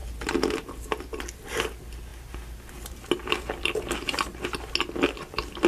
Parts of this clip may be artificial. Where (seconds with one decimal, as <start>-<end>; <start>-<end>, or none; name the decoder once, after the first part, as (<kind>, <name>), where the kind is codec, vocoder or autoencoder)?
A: none

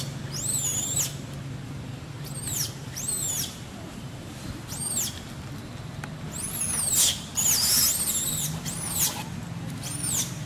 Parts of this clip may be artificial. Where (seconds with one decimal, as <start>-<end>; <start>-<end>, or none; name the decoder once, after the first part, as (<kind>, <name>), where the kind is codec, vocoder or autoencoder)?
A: 2.5-4.7 (vocoder, BigVGAN v2)

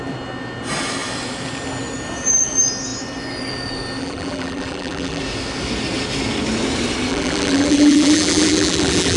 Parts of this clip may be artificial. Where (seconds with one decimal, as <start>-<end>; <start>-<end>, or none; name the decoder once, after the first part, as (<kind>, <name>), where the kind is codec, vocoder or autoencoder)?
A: 4.0-5.2 (vocoder, BigVGAN v2); 7.1-9.2

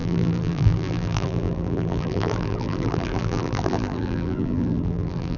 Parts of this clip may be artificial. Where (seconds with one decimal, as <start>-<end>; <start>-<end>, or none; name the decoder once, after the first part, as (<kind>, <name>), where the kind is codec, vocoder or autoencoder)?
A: 0.0-5.4 (vocoder, BigVGAN v2)

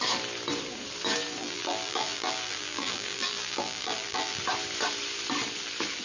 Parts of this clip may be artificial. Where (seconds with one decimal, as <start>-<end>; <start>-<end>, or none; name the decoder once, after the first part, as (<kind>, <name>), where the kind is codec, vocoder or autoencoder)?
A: 1.4-4.4 (vocoder, BigVGAN v2)